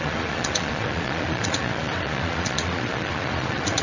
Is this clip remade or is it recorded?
remade